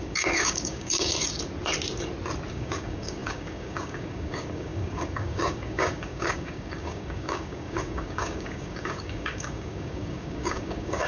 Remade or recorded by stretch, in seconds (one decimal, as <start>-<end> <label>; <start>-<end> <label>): 0.0-1.1 remade; 1.1-2.5 recorded; 2.5-11.1 remade